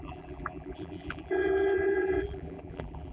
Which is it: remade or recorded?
remade